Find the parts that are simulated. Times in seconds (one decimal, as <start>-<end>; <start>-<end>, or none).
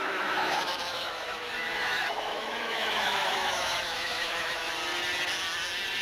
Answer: 0.0-4.7